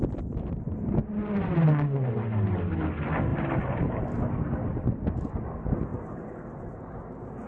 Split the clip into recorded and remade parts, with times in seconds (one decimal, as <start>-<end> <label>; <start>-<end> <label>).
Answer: 0.0-3.3 recorded; 3.3-4.0 remade; 4.0-5.9 recorded; 5.9-6.5 remade; 6.5-7.5 recorded